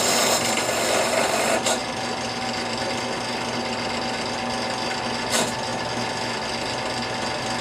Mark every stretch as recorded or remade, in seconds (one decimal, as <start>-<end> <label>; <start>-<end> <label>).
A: 0.0-1.8 recorded; 1.8-3.0 remade; 3.0-7.6 recorded